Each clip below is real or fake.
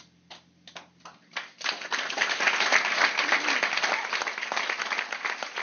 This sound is real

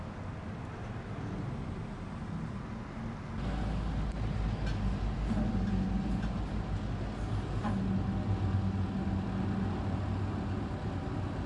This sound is real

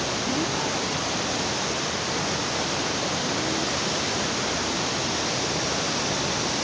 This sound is real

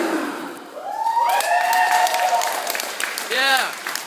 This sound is fake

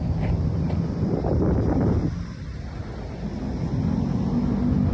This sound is real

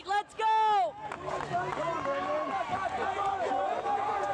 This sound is real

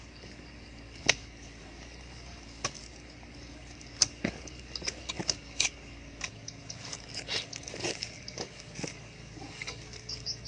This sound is fake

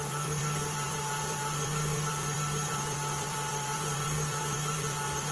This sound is fake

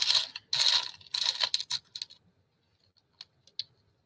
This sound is real